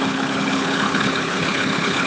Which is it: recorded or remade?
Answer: remade